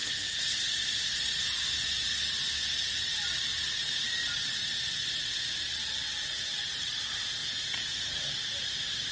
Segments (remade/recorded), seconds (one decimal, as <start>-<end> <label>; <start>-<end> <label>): 0.0-6.1 recorded; 6.1-6.8 remade; 6.8-7.4 recorded; 7.4-8.3 remade; 8.3-9.1 recorded